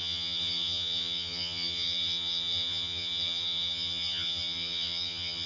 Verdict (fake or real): fake